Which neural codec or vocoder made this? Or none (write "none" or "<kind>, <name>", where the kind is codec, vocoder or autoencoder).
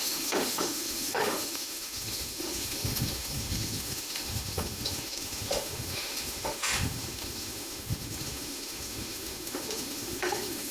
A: autoencoder, DAC-VAE